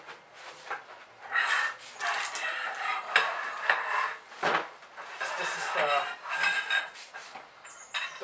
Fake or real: real